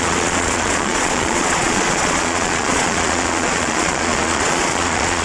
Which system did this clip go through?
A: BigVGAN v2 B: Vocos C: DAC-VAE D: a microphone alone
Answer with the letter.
B